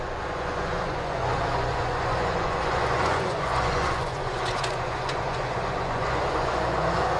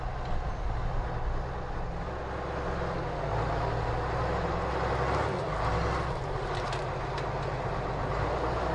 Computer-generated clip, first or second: first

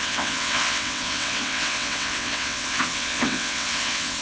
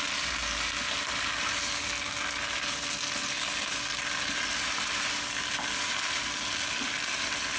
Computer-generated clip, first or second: first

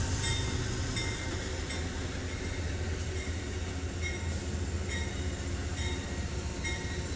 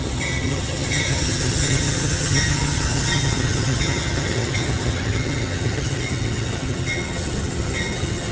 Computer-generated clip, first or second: second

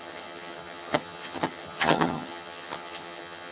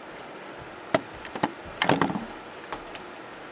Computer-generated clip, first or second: first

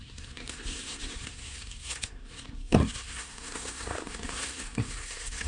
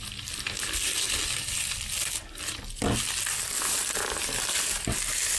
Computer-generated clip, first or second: first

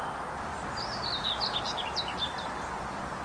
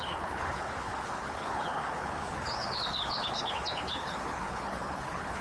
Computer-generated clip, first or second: second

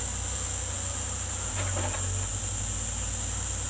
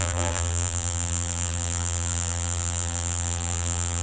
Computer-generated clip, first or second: second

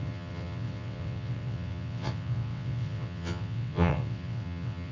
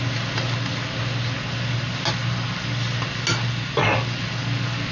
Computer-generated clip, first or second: first